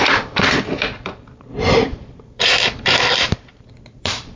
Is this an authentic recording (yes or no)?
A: no